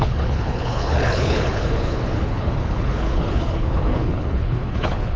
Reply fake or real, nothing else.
fake